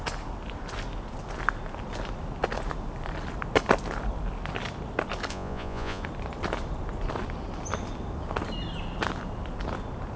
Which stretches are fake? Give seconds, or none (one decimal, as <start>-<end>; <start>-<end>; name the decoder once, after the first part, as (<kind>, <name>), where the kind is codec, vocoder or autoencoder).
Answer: 5.3-6.0 (vocoder, Vocos)